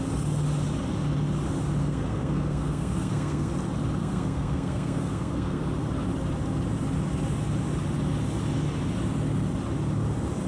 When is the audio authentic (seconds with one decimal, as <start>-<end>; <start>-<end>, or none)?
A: 0.0-1.8; 3.5-4.0; 5.6-10.5